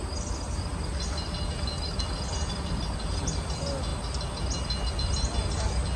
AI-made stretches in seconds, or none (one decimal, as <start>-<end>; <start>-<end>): none